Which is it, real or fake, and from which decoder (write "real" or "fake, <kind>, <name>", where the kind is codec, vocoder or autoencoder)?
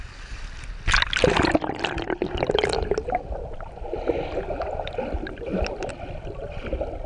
real